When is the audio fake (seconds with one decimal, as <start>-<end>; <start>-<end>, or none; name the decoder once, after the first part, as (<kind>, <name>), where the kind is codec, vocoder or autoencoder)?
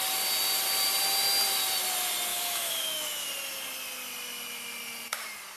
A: 2.3-3.3 (autoencoder, DAC-VAE)